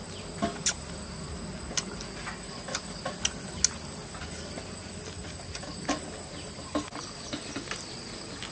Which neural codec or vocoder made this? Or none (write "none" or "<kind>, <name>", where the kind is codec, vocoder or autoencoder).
none